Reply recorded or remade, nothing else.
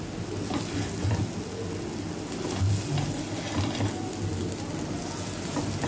recorded